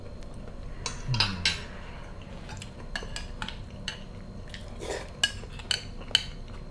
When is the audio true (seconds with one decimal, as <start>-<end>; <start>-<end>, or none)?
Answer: 0.0-6.7